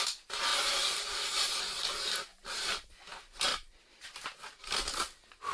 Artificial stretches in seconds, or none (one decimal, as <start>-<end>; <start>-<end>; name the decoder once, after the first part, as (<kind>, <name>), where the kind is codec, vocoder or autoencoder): 0.5-1.5 (vocoder, BigVGAN v2); 2.3-2.9; 3.5-4.6